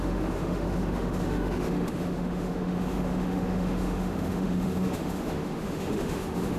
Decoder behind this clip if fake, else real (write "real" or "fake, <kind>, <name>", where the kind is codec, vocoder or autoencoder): fake, autoencoder, DAC-VAE